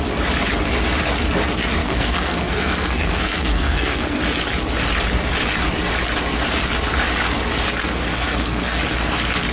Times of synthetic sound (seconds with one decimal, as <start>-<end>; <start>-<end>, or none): 1.8-4.2; 7.8-8.8